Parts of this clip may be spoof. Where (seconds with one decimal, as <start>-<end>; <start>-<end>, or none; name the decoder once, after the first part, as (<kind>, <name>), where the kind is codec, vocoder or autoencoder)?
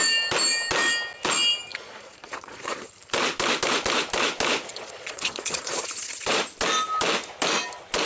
1.7-2.9 (vocoder, Vocos); 4.7-6.4